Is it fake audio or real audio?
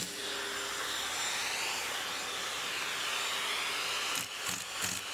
real